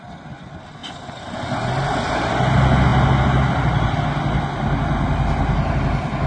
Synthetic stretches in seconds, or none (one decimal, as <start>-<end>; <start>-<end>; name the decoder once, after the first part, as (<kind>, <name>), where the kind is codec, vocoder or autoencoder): none